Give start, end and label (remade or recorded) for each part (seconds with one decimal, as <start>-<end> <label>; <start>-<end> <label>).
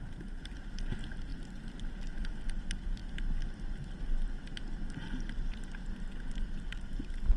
0.0-7.4 recorded